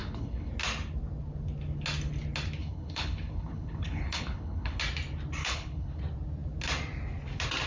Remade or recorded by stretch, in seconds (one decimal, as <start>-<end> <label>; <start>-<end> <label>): 0.0-0.5 remade; 0.5-2.6 recorded; 2.6-4.8 remade; 4.8-5.4 recorded; 5.4-6.0 remade; 6.0-7.7 recorded

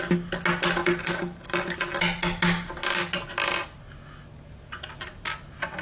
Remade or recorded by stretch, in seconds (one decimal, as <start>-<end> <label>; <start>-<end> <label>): 0.0-5.8 recorded

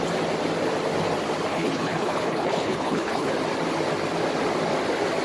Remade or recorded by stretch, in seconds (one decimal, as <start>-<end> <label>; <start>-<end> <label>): 0.0-1.5 recorded; 1.5-3.3 remade; 3.3-5.2 recorded

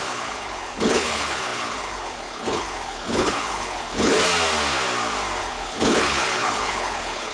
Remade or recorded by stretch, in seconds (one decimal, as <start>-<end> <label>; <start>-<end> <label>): 0.0-4.1 remade; 4.1-5.4 recorded; 5.4-7.3 remade